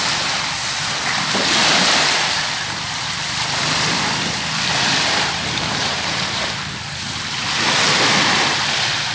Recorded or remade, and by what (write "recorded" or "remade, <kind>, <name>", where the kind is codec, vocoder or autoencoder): remade, vocoder, BigVGAN v2